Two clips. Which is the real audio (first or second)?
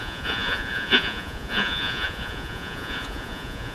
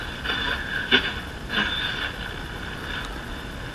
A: second